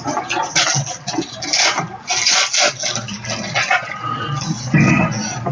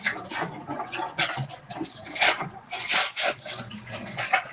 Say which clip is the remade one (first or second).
second